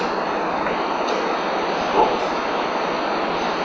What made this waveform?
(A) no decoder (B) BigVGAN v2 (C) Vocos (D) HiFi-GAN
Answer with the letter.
A